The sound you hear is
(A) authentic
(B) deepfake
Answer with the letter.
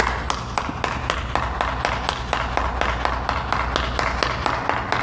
A